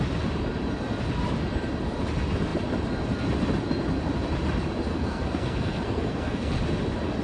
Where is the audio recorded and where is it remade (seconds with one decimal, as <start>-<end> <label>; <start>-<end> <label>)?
0.0-4.9 recorded; 4.9-6.6 remade; 6.6-7.2 recorded